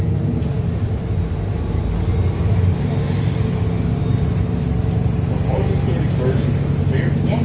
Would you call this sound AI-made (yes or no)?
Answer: no